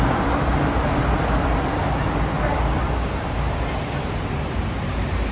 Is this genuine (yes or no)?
yes